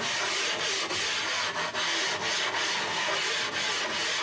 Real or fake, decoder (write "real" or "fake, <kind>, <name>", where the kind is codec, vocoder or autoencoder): real